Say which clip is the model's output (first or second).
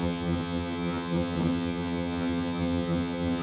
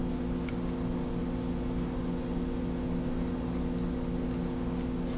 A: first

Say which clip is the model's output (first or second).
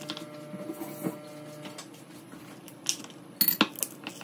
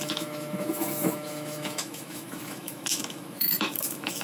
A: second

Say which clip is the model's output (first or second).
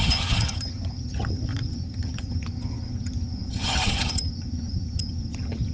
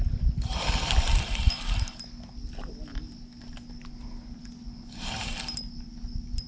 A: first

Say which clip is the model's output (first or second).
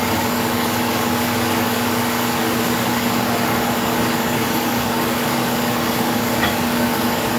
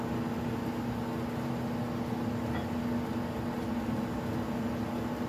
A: first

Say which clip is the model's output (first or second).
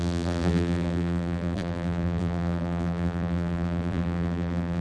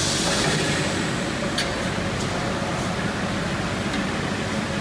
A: first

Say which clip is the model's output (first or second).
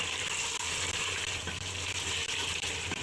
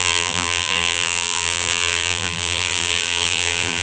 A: second